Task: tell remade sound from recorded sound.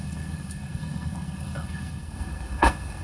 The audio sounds remade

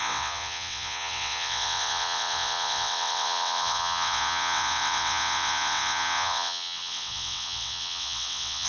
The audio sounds remade